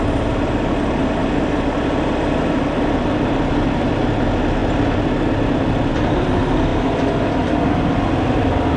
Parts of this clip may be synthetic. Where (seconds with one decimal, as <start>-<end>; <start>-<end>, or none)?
none

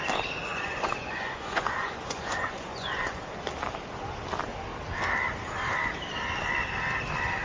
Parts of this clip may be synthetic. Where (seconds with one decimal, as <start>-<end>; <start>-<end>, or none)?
0.4-3.2

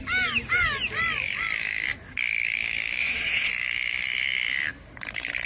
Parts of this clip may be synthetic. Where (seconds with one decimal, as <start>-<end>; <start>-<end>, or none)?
3.0-3.5

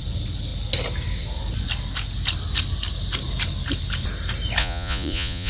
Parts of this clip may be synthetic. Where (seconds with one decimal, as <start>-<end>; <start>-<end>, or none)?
4.6-5.5

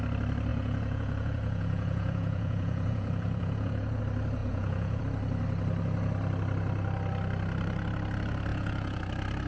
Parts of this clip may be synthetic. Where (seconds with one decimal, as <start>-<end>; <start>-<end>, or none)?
0.5-4.0; 4.4-5.0; 8.5-9.0